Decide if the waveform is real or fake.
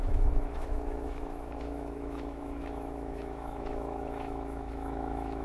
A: fake